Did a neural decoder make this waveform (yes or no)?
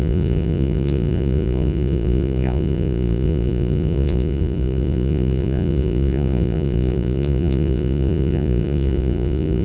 yes